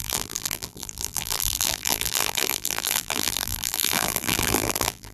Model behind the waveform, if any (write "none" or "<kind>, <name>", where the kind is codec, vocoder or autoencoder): vocoder, BigVGAN v2